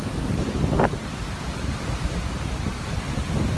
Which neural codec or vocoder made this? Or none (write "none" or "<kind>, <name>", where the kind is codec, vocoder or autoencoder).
none